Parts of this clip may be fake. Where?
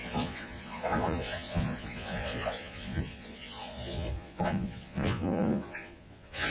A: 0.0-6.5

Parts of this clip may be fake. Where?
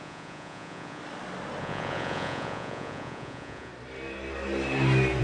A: 0.0-1.0; 1.6-3.7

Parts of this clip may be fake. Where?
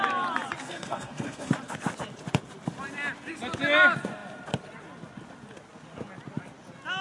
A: 0.6-1.5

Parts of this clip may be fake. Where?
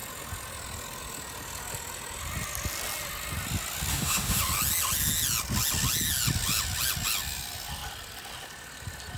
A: 3.9-4.4